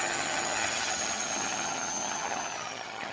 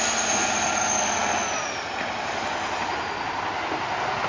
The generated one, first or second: first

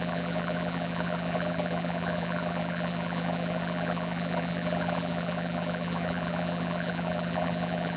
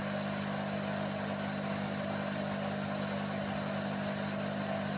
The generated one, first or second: first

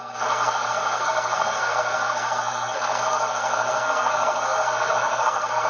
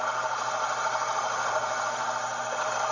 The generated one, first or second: first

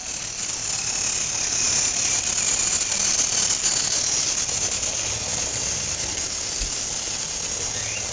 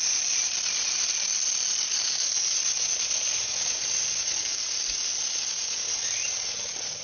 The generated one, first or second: second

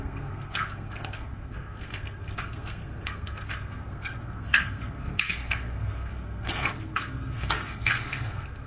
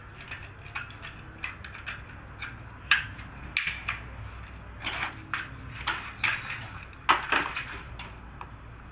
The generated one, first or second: first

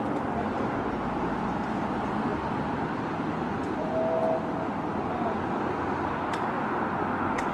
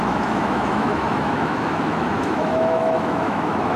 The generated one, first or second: second